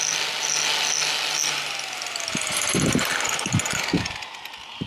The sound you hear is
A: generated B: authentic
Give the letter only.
B